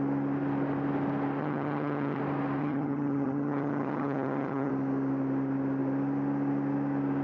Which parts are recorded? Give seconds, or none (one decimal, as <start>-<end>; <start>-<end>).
0.0-1.4; 2.2-2.6; 4.7-7.2